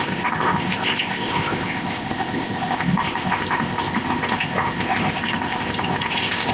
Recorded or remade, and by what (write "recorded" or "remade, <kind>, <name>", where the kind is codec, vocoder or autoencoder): remade, codec, ZipCodec